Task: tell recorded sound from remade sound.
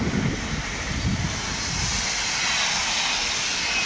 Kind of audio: recorded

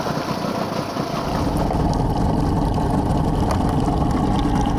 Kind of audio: recorded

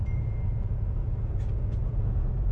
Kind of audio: remade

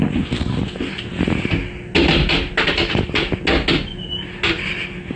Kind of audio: recorded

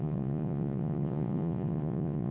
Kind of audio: remade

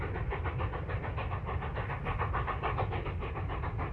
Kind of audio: recorded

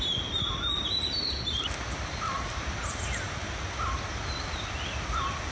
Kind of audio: recorded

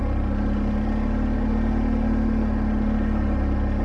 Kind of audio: recorded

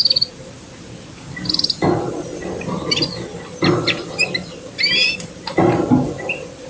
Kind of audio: recorded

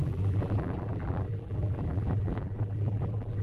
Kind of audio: remade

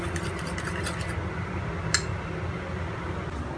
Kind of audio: recorded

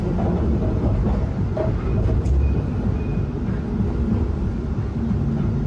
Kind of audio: recorded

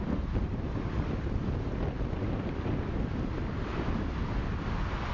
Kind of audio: recorded